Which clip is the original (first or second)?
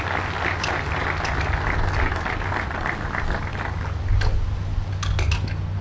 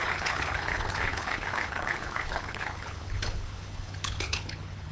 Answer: first